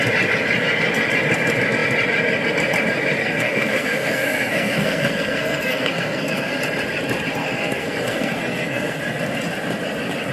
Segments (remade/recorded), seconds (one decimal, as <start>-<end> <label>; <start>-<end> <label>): 0.0-3.2 recorded; 3.2-6.6 remade; 6.6-7.4 recorded; 7.4-9.0 remade; 9.0-10.3 recorded